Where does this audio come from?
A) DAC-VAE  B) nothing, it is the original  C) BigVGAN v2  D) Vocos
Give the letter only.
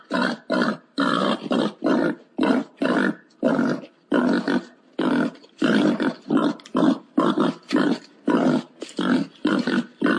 B